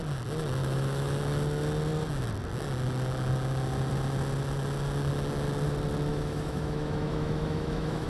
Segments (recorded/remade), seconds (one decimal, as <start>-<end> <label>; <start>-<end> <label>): 0.0-0.6 recorded; 0.6-1.2 remade; 1.2-6.1 recorded; 6.1-8.1 remade